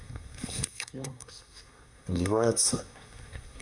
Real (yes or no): no